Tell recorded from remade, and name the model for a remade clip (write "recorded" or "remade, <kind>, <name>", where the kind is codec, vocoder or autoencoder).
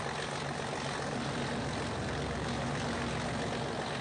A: recorded